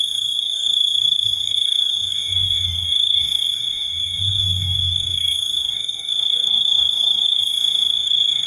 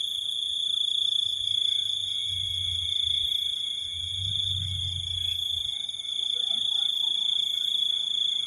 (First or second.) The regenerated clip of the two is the first